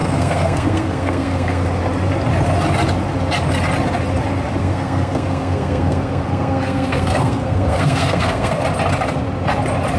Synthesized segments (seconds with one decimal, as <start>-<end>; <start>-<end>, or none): 0.0-1.6; 4.6-8.6